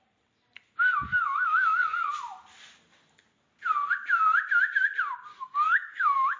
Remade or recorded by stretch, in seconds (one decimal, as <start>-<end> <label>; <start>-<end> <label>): 0.0-1.1 recorded; 1.1-2.1 remade; 2.1-5.3 recorded; 5.3-6.4 remade